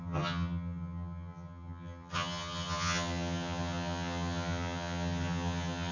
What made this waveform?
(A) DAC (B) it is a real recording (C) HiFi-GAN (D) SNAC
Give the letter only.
C